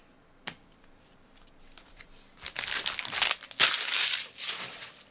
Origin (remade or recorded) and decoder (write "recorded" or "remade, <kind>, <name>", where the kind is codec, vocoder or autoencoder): recorded